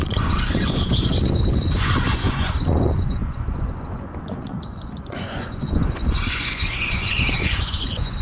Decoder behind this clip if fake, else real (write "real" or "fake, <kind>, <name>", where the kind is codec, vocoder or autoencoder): fake, vocoder, Vocos